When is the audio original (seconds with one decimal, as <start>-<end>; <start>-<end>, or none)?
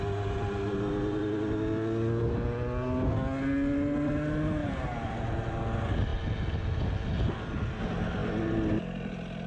0.0-4.6; 5.6-9.5